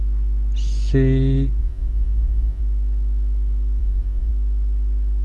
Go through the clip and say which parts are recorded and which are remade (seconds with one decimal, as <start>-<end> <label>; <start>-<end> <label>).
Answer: 0.0-1.6 recorded; 1.6-2.6 remade; 2.6-3.8 recorded; 3.8-4.3 remade; 4.3-5.2 recorded